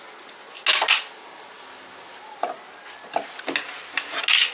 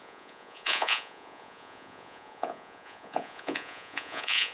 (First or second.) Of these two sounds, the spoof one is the second